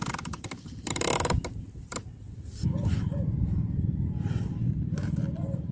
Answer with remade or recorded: recorded